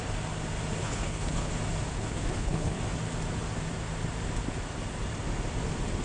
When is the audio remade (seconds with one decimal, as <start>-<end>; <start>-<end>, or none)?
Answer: 0.8-1.5; 1.9-2.8